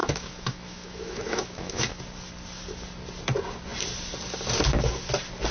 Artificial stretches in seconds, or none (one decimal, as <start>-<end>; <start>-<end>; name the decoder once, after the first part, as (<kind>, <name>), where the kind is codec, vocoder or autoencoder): 0.0-2.0 (autoencoder, DAC-VAE)